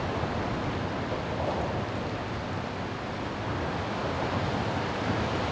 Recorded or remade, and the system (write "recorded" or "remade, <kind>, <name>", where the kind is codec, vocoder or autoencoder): recorded